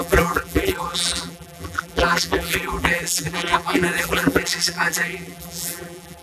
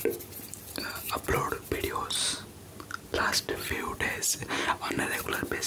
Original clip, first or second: second